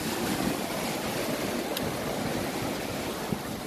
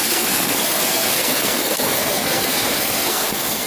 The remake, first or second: second